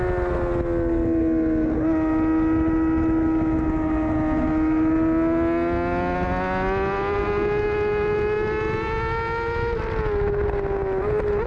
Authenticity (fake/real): real